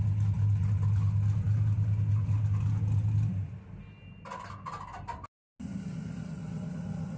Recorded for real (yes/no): yes